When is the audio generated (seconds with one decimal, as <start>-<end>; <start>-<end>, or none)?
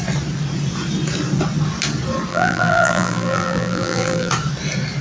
2.3-4.3